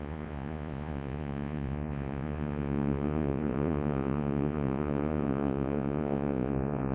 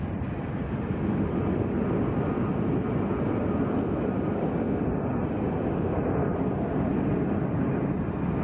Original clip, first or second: second